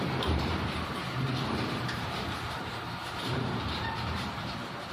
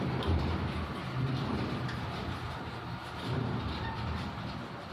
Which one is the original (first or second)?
second